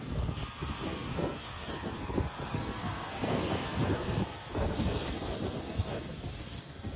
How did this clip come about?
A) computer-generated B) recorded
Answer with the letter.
A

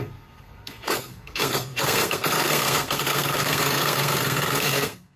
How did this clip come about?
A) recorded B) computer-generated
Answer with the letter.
B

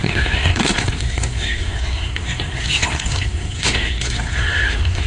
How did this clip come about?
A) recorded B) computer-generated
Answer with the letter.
B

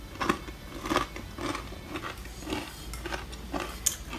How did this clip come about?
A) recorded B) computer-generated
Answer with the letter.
A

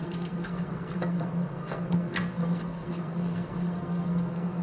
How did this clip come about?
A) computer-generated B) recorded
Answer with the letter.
A